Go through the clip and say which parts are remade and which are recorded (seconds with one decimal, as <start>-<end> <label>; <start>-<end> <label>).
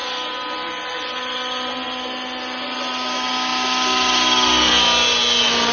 0.0-5.7 recorded